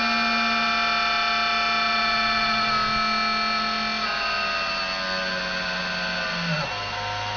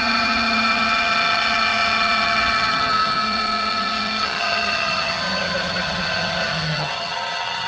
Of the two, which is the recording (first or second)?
first